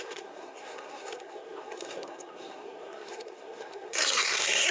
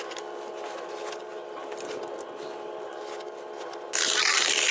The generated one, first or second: first